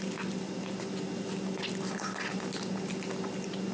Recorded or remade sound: recorded